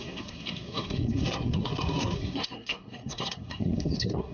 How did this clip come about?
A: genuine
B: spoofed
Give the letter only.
B